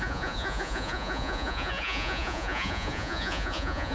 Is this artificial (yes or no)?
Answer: yes